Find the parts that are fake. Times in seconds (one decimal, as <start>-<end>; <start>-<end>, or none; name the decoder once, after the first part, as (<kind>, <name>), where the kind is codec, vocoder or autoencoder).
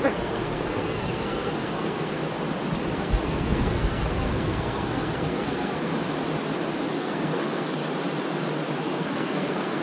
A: 0.0-2.2 (codec, SNAC); 2.9-5.9; 6.9-7.8; 8.8-9.8